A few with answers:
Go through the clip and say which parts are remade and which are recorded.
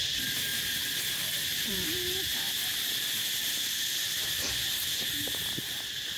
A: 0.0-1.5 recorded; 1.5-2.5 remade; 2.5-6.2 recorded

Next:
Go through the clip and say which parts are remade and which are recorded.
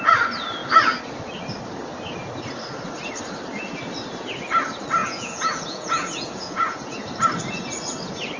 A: 0.0-5.0 recorded; 5.0-7.0 remade; 7.0-8.4 recorded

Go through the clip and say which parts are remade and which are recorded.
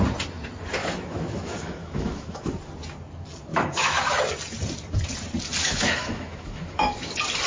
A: 0.0-0.8 recorded; 0.8-2.5 remade; 2.5-3.5 recorded; 3.5-4.2 remade; 4.2-5.6 recorded; 5.6-7.1 remade; 7.1-7.5 recorded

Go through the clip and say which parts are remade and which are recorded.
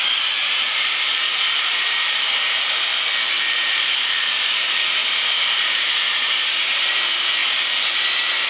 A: 0.0-2.9 remade; 2.9-3.5 recorded; 3.5-7.4 remade; 7.4-8.5 recorded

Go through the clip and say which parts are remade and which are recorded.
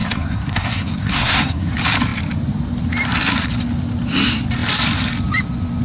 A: 0.0-1.7 remade; 1.7-5.8 recorded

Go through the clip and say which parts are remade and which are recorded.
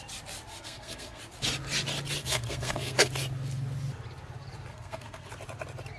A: 0.0-0.5 recorded; 0.5-1.2 remade; 1.2-2.2 recorded; 2.2-3.1 remade; 3.1-4.7 recorded; 4.7-5.3 remade; 5.3-6.0 recorded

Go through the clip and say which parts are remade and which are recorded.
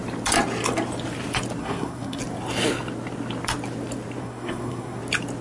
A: 0.0-1.6 recorded; 1.6-2.2 remade; 2.2-4.2 recorded; 4.2-5.0 remade; 5.0-5.4 recorded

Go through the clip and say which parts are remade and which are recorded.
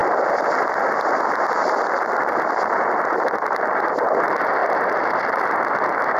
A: 0.0-1.6 recorded; 1.6-2.4 remade; 2.4-4.6 recorded; 4.6-5.4 remade; 5.4-6.2 recorded